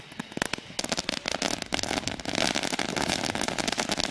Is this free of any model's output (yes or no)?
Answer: yes